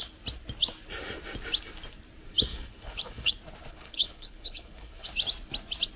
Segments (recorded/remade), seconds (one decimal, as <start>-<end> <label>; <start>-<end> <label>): 0.0-2.5 recorded; 2.5-3.3 remade; 3.3-3.7 recorded; 3.7-5.1 remade; 5.1-6.0 recorded